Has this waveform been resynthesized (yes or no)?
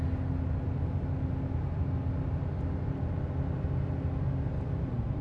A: no